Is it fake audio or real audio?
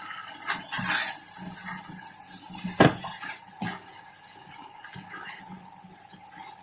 real